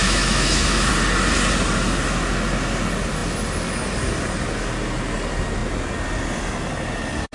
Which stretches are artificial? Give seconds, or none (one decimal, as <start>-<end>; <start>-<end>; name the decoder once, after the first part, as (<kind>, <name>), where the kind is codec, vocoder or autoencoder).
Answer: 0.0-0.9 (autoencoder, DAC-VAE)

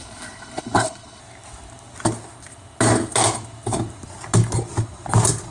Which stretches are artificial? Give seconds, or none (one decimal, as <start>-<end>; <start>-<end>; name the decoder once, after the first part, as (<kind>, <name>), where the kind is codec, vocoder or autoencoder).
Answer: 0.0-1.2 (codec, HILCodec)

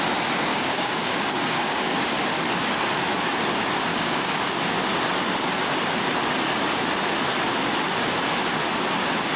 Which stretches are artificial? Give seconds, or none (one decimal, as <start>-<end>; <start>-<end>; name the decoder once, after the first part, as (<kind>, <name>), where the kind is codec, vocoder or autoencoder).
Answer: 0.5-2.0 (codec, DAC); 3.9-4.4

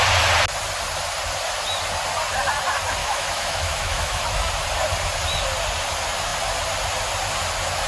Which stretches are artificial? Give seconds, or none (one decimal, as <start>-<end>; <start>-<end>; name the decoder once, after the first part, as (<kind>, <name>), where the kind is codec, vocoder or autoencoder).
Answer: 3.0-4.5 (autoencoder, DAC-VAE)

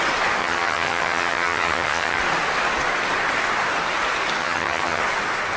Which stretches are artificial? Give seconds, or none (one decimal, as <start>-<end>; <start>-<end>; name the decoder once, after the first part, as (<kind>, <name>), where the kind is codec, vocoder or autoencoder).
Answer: 0.4-2.2 (vocoder, HiFi-GAN); 4.4-5.0